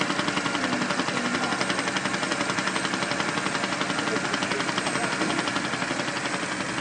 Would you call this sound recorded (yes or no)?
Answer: yes